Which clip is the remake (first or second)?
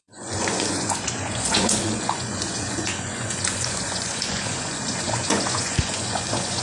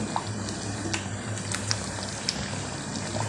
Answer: first